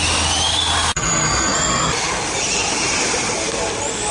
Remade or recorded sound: recorded